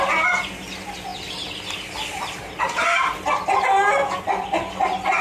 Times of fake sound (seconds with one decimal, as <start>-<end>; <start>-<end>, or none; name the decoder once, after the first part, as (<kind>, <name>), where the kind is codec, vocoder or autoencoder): none